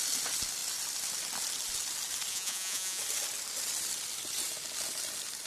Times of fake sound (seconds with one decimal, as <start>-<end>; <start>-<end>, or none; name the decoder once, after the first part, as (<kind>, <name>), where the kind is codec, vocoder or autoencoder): 2.3-3.0 (vocoder, Vocos)